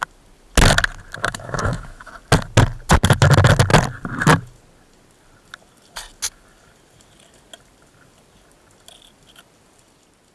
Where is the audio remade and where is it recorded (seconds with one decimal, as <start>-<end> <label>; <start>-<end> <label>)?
0.0-1.2 recorded; 1.2-2.1 remade; 2.1-10.3 recorded